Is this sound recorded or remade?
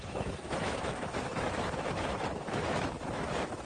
remade